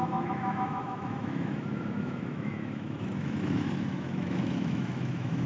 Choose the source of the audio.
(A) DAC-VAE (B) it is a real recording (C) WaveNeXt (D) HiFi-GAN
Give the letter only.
A